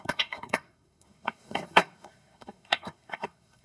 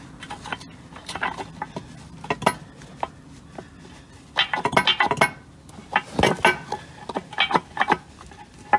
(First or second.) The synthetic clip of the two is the first